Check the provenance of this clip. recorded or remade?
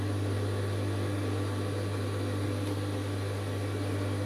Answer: recorded